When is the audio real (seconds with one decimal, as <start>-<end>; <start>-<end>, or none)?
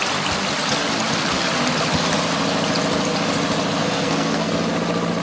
0.0-3.8; 4.5-5.2